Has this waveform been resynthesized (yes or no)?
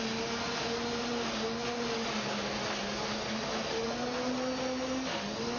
no